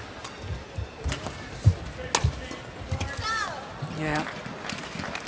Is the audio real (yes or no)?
yes